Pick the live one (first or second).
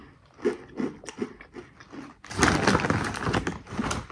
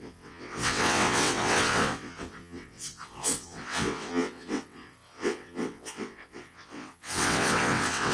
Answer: first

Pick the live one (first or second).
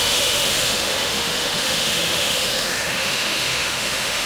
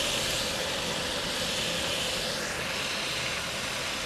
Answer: second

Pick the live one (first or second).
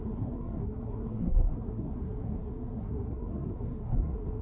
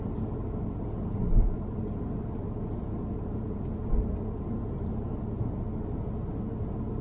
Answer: second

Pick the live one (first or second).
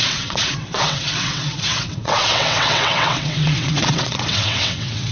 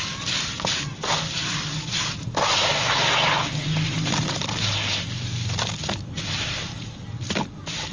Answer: second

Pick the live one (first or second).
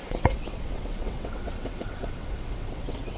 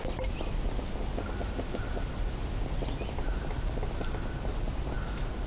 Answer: second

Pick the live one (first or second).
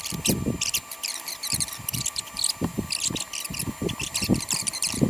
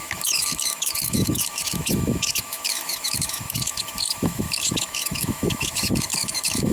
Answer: first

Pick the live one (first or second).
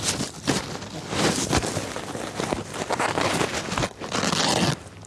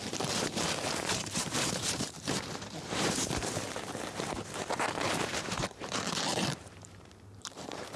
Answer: first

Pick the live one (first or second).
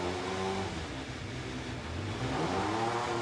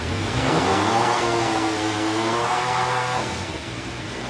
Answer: first